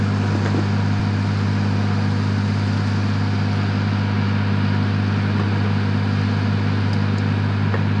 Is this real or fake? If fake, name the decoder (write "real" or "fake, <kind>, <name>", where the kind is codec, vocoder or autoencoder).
real